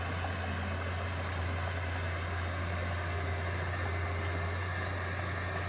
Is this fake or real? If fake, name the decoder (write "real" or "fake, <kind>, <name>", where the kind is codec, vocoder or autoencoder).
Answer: real